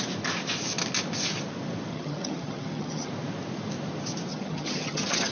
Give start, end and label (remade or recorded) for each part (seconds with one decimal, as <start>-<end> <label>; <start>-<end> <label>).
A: 0.0-1.9 recorded; 1.9-3.1 remade; 3.1-4.3 recorded; 4.3-5.3 remade